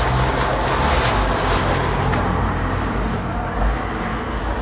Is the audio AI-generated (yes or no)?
no